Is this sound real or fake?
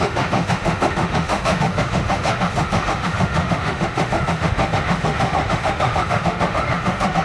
fake